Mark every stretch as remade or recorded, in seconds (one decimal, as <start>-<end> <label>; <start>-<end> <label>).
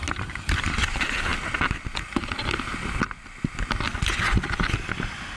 0.0-5.4 recorded